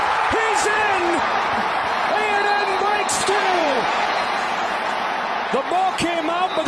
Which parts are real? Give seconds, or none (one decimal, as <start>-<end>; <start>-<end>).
0.9-2.7; 5.4-6.7